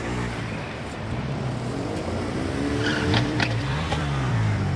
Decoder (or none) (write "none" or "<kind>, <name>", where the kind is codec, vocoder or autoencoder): vocoder, BigVGAN v2